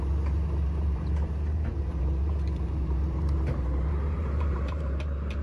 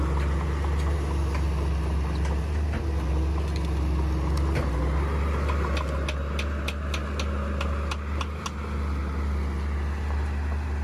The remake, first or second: first